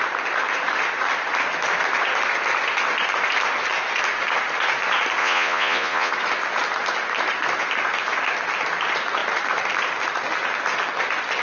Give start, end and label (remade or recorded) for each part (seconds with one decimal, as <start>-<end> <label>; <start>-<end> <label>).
0.0-5.2 recorded; 5.2-6.1 remade; 6.1-11.4 recorded

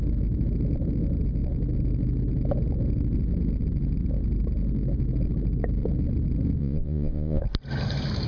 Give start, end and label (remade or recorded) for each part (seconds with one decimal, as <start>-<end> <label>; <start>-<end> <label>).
0.0-6.6 recorded; 6.6-7.4 remade; 7.4-8.3 recorded

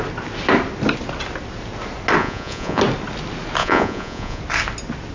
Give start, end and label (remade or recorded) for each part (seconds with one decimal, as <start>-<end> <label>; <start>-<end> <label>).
0.0-2.2 recorded; 2.2-2.8 remade; 2.8-3.6 recorded; 3.6-4.4 remade; 4.4-5.1 recorded

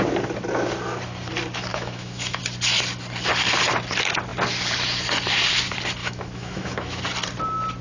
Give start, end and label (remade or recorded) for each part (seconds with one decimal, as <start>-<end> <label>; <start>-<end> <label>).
0.0-1.7 recorded; 1.7-2.4 remade; 2.4-6.0 recorded; 6.0-7.0 remade; 7.0-7.8 recorded

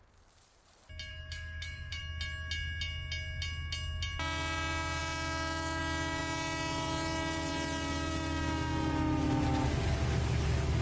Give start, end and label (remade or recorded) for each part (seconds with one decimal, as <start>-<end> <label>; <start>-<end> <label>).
0.0-1.1 recorded; 1.1-2.0 remade; 2.0-5.0 recorded; 5.0-5.8 remade; 5.8-10.8 recorded

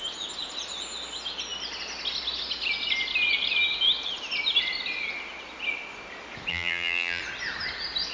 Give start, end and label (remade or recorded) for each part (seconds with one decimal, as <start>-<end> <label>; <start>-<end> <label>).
0.0-6.5 recorded; 6.5-7.2 remade; 7.2-8.1 recorded

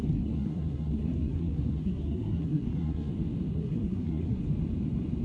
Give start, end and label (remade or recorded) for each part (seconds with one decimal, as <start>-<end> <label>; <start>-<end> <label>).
0.0-3.1 remade; 3.1-3.5 recorded; 3.5-4.4 remade; 4.4-5.2 recorded